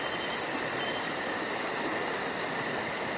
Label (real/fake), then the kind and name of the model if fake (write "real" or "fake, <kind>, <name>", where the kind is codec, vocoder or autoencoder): real